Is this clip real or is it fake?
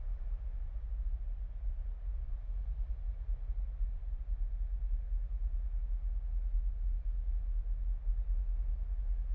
real